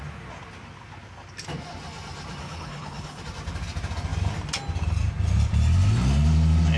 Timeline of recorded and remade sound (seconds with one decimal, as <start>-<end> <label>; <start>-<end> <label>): 0.0-2.4 recorded; 2.4-3.2 remade; 3.2-6.8 recorded